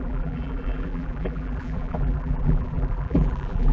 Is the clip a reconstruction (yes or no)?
yes